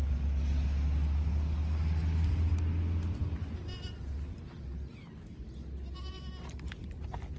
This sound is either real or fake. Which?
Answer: real